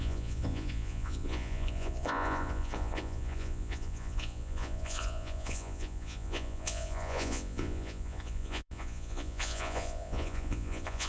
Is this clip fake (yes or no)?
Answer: yes